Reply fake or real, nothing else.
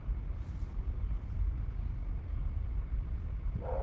real